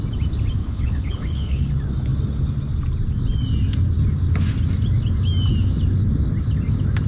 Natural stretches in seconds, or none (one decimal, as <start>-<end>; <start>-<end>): 0.0-0.6; 1.7-7.1